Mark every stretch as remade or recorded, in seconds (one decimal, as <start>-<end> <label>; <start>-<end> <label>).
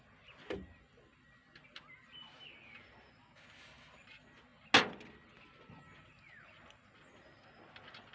0.0-8.1 recorded